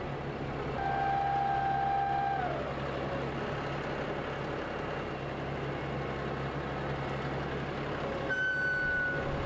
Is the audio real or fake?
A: real